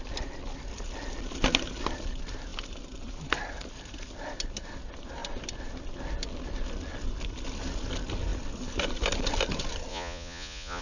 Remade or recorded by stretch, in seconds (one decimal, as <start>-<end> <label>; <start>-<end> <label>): 0.0-9.9 recorded; 9.9-10.8 remade